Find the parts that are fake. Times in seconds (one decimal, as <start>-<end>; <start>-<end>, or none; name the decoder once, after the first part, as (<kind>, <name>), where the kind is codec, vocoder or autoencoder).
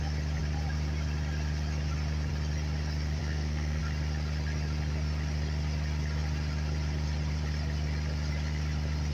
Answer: 3.2-3.8 (codec, SNAC)